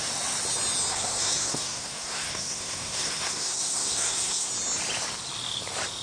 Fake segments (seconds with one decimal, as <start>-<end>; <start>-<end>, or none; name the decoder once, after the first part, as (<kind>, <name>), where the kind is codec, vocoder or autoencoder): 0.9-4.5 (codec, SNAC)